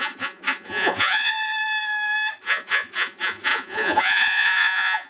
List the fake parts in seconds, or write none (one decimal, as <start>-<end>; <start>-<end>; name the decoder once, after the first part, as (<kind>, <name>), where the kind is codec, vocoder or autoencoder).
0.0-1.3 (vocoder, Vocos); 2.4-5.1